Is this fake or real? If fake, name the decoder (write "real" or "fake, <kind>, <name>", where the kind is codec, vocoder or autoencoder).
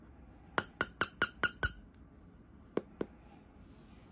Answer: real